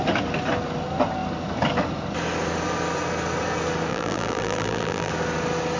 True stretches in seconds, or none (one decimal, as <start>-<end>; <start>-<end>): 0.0-3.9; 5.1-5.8